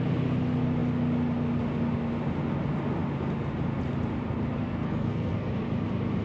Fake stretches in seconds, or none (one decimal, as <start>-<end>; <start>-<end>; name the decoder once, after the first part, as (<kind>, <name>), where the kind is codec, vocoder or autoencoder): 4.6-5.5 (codec, SNAC)